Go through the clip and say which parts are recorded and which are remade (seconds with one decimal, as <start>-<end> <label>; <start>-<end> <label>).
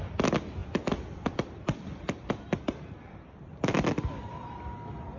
0.0-0.6 recorded; 0.6-3.7 remade; 3.7-5.2 recorded